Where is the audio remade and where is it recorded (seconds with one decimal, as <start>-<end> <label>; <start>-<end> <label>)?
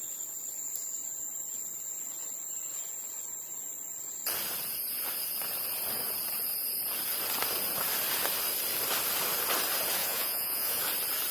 0.0-10.0 recorded; 10.0-10.8 remade; 10.8-11.3 recorded